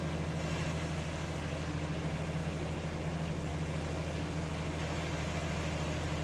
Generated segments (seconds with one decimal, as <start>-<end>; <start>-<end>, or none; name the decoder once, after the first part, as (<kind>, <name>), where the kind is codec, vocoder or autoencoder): none